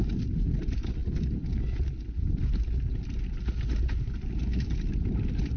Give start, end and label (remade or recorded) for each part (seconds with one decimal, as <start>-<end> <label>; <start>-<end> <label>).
0.0-5.6 recorded